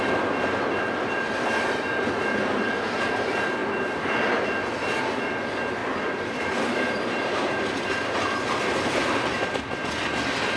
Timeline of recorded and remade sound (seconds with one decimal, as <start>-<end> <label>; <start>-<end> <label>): 0.0-5.8 recorded; 5.8-8.6 remade; 8.6-10.6 recorded